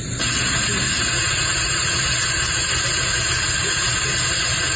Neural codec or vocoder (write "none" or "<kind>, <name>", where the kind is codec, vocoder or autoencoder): vocoder, BigVGAN v2